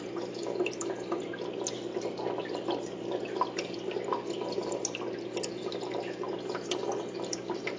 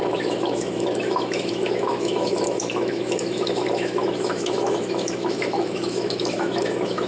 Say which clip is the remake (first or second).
second